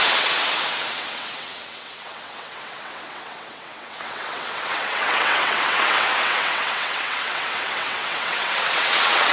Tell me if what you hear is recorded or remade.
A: remade